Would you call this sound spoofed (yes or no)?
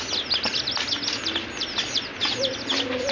no